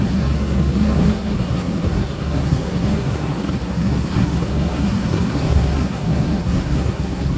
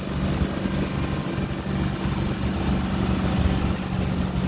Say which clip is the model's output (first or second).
first